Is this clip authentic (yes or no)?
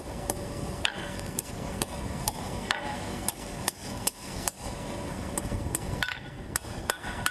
no